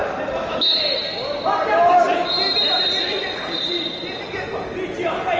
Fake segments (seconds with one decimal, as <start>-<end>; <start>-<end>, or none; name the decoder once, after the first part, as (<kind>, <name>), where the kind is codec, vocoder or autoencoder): none